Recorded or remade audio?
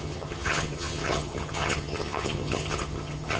remade